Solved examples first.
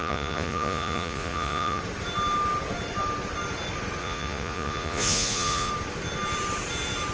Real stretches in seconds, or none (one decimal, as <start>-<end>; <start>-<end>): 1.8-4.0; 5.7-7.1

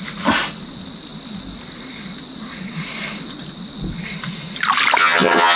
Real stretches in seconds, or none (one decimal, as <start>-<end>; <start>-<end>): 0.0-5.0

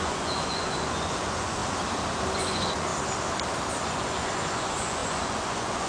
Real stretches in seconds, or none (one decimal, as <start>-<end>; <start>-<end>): 1.6-2.4; 2.9-3.8

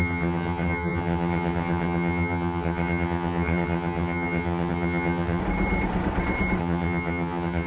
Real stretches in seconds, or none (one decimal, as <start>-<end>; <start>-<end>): 5.4-6.6

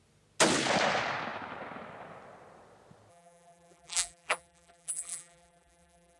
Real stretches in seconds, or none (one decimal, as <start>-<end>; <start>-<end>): 0.0-3.1

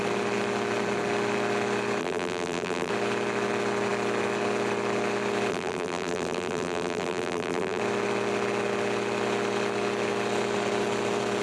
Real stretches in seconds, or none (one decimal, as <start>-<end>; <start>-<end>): 0.0-2.0; 2.9-5.5; 7.8-11.4